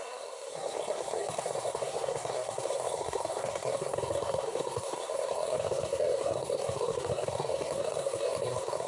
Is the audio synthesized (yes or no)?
yes